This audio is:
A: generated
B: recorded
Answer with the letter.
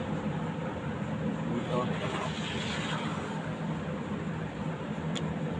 B